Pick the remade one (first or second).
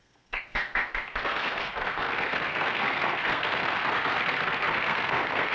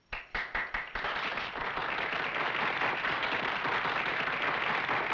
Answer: first